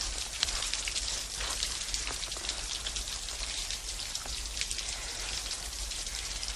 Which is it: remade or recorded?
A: remade